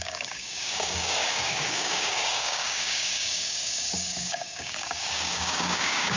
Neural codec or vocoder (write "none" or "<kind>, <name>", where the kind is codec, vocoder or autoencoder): codec, DAC